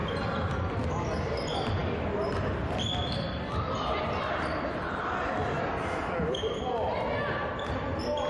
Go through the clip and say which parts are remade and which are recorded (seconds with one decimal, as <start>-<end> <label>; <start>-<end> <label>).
0.0-8.3 recorded